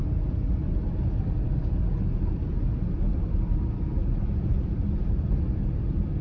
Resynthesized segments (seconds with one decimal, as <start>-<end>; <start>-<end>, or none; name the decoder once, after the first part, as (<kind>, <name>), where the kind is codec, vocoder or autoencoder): 3.1-5.3 (vocoder, BigVGAN v2)